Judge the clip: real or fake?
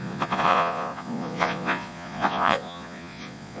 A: fake